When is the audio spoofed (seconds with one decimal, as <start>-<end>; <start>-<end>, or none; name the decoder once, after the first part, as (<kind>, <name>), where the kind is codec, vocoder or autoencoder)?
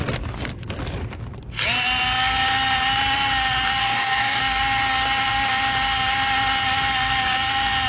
3.8-4.4 (codec, DAC)